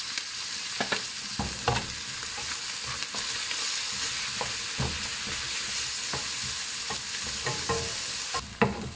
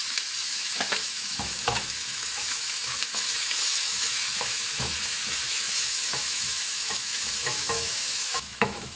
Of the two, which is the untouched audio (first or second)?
first